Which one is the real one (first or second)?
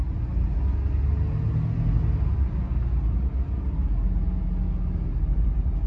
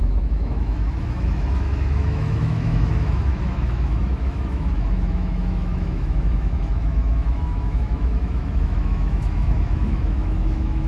first